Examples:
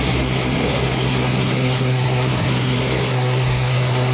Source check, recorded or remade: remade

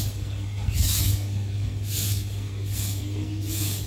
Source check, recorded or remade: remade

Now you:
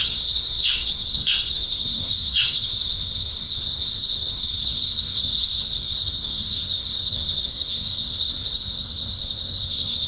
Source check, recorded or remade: remade